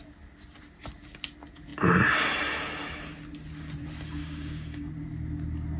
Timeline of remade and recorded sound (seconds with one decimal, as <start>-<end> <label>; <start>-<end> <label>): 0.0-4.2 recorded; 4.2-4.9 remade; 4.9-5.8 recorded